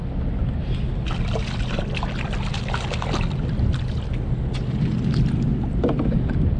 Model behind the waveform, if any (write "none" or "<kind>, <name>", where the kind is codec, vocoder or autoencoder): none